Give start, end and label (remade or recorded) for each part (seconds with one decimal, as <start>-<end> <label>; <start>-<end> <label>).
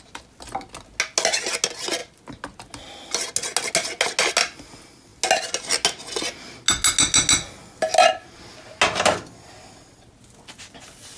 0.0-11.2 recorded